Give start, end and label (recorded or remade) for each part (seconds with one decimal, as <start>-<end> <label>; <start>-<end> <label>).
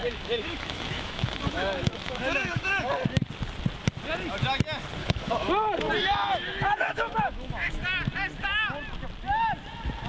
0.0-2.8 remade; 2.8-5.0 recorded; 5.0-5.5 remade; 5.5-6.0 recorded; 6.0-7.8 remade; 7.8-10.1 recorded